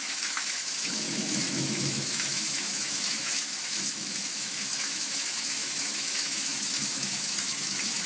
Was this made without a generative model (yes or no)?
no